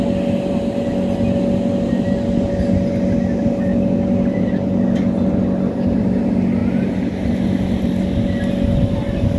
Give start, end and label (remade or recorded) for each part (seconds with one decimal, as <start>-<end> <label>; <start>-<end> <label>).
0.0-9.4 recorded